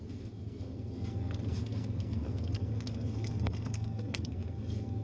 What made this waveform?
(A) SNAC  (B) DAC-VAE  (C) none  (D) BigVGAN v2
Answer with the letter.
A